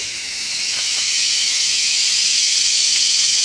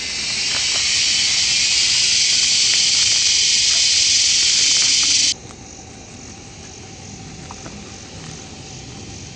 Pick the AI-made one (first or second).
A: first